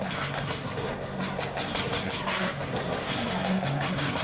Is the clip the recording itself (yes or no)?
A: no